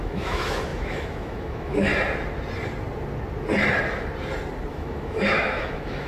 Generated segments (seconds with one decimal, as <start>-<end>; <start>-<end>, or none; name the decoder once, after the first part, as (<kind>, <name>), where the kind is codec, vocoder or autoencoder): 0.0-1.9 (autoencoder, DAC-VAE); 4.7-6.1